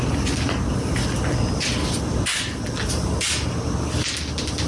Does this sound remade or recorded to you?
recorded